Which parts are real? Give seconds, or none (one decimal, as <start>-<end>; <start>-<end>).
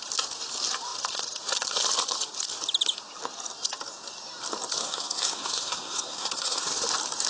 0.0-4.8; 6.6-7.3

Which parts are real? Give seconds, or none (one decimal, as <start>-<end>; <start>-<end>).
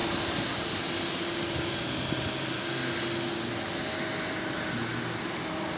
0.0-5.8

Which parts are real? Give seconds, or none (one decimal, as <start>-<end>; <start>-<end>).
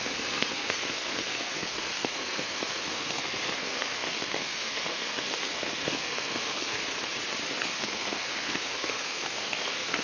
6.8-7.6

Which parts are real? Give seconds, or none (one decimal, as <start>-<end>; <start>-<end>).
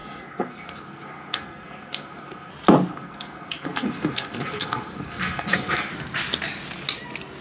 2.5-2.9; 5.9-7.4